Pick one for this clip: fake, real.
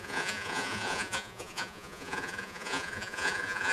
fake